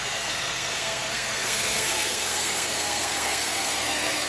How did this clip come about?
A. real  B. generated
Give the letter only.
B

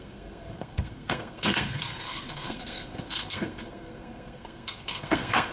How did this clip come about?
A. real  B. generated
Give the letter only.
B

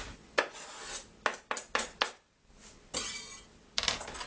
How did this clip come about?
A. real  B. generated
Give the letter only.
A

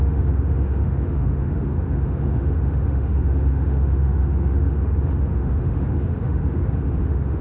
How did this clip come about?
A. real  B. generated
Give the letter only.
B